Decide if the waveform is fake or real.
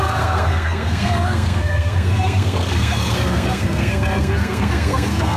fake